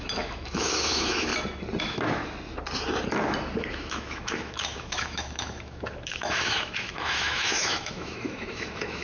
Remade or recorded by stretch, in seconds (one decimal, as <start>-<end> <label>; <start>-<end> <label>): 0.0-1.3 remade; 1.3-1.8 recorded; 1.8-2.2 remade; 2.2-3.7 recorded; 3.7-9.0 remade